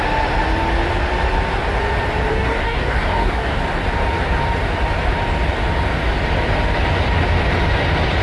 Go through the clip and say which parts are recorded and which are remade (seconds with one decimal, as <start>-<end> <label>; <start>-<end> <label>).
0.0-2.3 recorded; 2.3-3.6 remade; 3.6-8.2 recorded